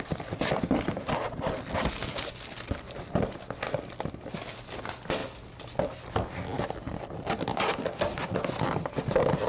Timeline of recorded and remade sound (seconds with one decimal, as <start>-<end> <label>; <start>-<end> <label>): 0.0-9.5 recorded

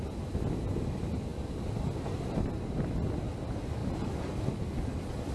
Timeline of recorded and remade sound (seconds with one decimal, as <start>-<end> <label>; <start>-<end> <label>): 0.0-5.3 recorded

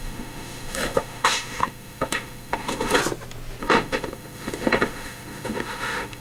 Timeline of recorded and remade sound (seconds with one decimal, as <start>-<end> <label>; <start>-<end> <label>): 0.0-3.0 remade; 3.0-3.6 recorded; 3.6-6.2 remade

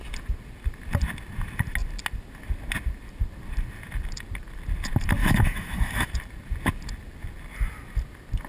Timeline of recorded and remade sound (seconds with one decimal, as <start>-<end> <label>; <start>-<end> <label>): 0.0-5.2 recorded; 5.2-6.1 remade; 6.1-8.5 recorded